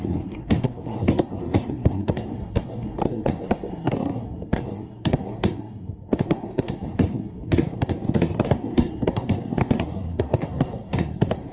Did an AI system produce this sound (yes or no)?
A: yes